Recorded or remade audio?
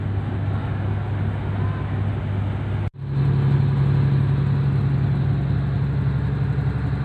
recorded